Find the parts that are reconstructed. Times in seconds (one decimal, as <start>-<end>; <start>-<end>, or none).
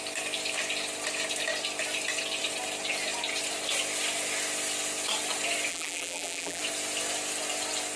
5.7-6.6